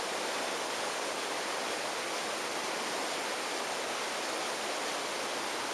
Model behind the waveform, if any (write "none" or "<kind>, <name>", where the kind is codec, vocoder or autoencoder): none